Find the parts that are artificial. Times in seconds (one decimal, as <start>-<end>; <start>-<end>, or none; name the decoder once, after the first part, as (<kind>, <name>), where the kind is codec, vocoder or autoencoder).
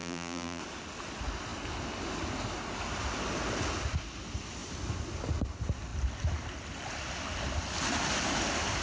0.0-0.6 (vocoder, BigVGAN v2)